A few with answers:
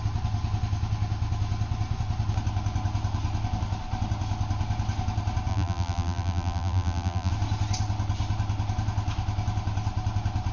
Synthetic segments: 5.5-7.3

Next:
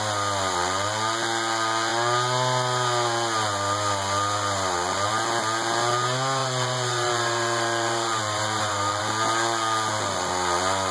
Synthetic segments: 6.4-9.0

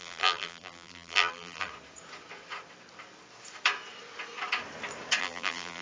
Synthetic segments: 0.0-1.7; 5.2-5.8

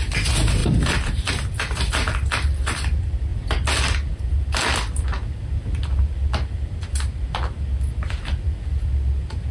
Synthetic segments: 0.6-1.3

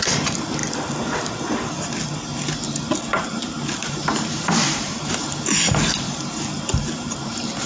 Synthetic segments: 0.0-0.6; 3.2-7.7

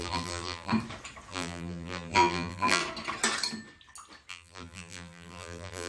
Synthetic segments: 0.0-0.7; 1.3-2.8; 4.3-5.9

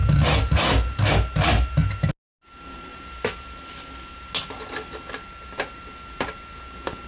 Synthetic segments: none